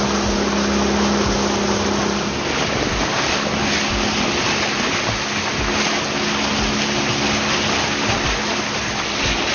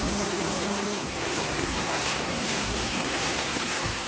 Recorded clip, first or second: first